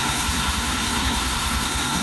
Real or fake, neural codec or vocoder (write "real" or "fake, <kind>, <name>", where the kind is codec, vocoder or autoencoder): fake, codec, SNAC